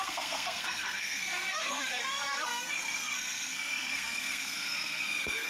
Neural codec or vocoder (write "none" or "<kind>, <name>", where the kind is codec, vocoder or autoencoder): codec, SNAC